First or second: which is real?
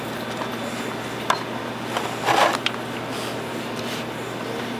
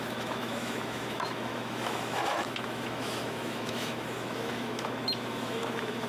first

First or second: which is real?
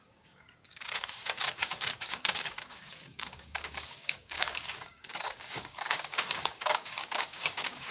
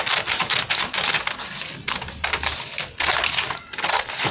second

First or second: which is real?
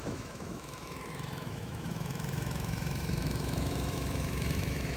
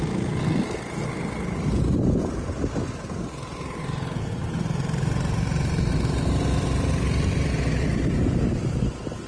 second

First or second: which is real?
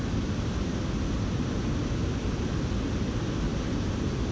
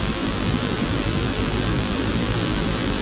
first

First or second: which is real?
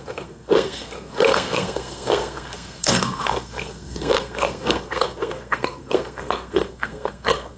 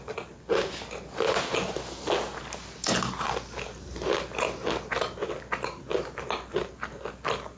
second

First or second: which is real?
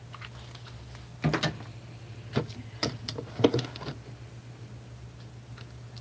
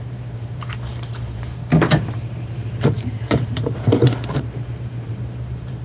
first